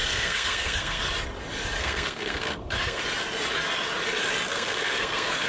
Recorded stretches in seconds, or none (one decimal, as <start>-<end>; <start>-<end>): 1.0-1.8; 3.0-4.5